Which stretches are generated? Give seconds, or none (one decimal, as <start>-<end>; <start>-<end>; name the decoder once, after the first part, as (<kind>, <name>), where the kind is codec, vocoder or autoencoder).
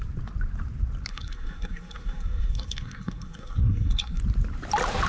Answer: 1.1-4.2 (codec, SNAC)